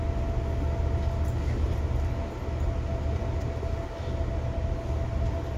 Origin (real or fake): real